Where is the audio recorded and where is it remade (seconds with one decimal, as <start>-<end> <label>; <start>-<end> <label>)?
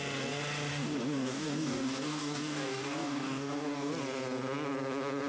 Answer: 0.0-0.7 recorded; 0.7-3.9 remade; 3.9-5.3 recorded